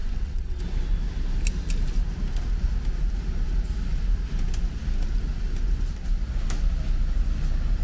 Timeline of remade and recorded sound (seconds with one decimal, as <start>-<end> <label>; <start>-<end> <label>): 0.0-0.6 remade; 0.6-7.8 recorded